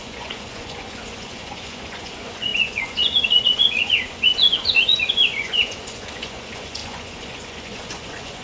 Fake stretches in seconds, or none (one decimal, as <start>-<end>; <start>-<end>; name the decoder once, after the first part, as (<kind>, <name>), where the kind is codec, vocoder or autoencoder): 0.0-8.4 (vocoder, Vocos)